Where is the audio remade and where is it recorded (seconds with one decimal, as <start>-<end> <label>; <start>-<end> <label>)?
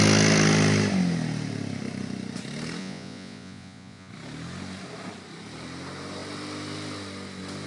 0.0-2.8 recorded; 2.8-4.1 remade; 4.1-7.7 recorded